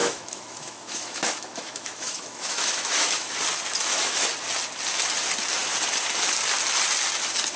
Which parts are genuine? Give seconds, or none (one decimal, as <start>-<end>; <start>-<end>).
3.3-3.8; 4.3-7.6